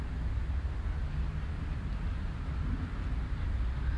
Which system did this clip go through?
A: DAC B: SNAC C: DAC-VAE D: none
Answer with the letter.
D